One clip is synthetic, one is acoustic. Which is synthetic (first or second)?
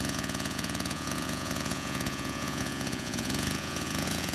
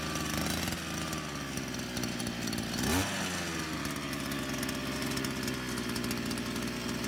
first